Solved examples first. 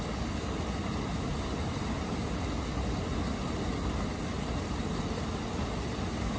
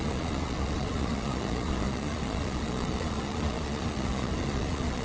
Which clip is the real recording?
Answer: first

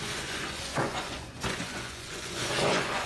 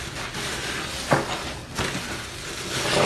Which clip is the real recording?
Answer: second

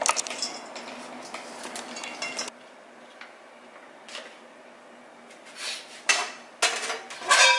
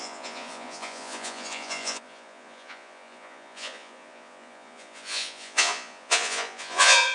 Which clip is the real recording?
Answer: first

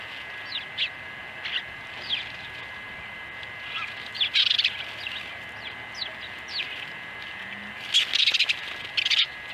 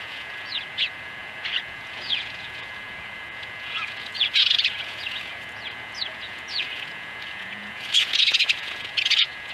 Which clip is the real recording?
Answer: first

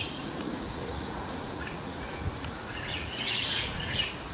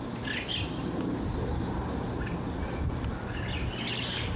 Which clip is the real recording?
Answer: second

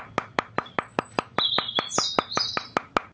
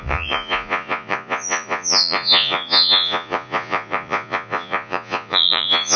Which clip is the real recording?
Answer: first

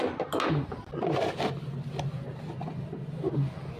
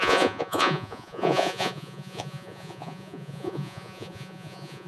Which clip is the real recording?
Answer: first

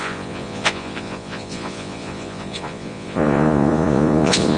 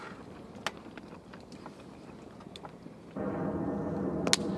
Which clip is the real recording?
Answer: second